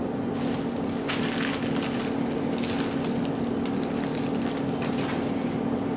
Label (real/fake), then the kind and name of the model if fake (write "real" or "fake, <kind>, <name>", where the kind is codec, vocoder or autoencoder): real